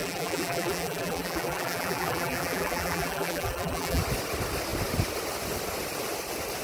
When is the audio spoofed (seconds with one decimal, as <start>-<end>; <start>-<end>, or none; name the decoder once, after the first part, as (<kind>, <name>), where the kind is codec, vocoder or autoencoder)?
0.0-4.0 (vocoder, BigVGAN v2)